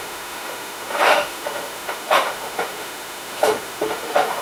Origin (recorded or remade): remade